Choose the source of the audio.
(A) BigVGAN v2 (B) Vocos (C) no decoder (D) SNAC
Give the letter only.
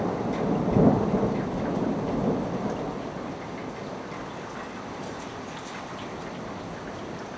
C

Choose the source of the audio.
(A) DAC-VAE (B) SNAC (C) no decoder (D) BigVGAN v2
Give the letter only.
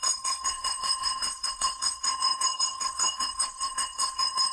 B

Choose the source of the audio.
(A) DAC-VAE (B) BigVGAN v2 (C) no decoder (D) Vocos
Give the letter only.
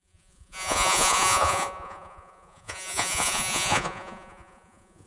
D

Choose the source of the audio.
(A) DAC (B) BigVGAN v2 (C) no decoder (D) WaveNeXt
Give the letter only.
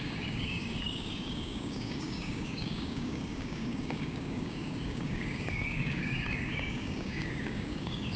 A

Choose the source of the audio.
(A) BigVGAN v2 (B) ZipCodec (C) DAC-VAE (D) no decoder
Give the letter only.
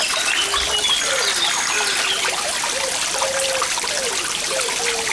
D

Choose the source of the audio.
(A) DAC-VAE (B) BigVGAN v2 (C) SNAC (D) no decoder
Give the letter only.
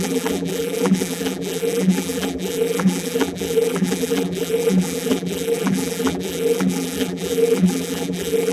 B